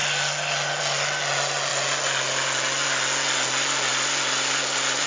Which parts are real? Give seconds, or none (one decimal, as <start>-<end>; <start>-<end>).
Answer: 0.0-5.1